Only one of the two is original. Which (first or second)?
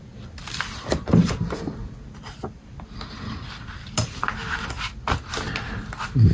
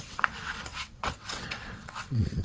first